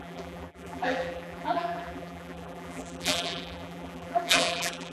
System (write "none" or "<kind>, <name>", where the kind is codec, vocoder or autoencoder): vocoder, BigVGAN v2